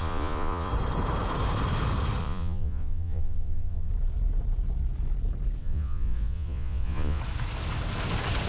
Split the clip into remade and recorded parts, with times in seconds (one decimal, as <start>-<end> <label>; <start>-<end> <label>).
0.0-0.7 remade; 0.7-2.2 recorded; 2.2-3.9 remade; 3.9-5.6 recorded; 5.6-7.2 remade; 7.2-8.5 recorded